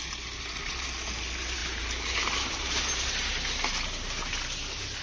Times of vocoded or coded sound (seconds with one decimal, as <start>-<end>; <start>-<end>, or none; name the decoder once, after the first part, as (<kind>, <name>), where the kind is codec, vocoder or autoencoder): 1.6-3.3 (vocoder, BigVGAN v2)

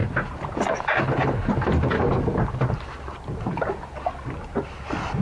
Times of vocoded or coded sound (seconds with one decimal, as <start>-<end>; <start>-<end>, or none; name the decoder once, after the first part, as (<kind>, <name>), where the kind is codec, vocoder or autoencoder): none

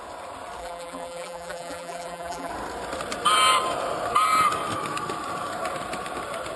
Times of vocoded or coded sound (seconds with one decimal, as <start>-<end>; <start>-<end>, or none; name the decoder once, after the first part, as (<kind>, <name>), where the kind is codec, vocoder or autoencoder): 0.6-2.5 (vocoder, BigVGAN v2)

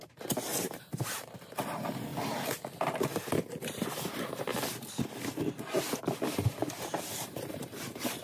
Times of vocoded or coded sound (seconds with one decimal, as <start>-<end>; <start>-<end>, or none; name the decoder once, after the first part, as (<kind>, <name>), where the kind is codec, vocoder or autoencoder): 0.5-1.4 (vocoder, BigVGAN v2); 6.6-8.2

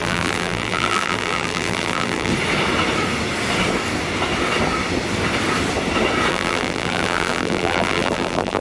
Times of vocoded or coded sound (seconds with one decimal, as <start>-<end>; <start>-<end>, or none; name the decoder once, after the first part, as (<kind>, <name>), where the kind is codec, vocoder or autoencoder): 0.0-2.3 (vocoder, BigVGAN v2); 6.3-8.6

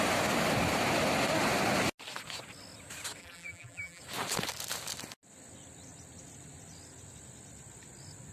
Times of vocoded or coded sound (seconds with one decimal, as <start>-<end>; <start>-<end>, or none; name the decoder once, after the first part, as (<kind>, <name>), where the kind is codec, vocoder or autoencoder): 3.2-4.0 (vocoder, BigVGAN v2)

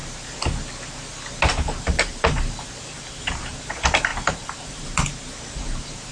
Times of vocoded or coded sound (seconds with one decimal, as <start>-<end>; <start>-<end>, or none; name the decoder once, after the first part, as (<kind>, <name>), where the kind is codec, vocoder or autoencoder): 1.5-6.1 (vocoder, BigVGAN v2)